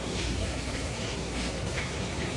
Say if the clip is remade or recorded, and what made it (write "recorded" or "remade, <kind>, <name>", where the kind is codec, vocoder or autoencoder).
remade, codec, SNAC